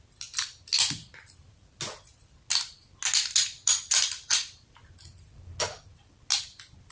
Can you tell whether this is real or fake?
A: real